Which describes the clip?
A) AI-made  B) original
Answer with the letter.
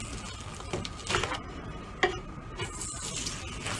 B